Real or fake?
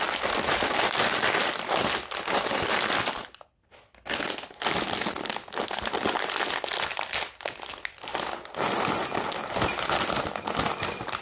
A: real